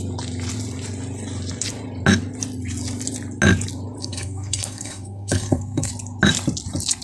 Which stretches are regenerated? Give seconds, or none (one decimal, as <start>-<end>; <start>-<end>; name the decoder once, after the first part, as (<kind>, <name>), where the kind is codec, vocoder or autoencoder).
4.0-5.9 (codec, SNAC)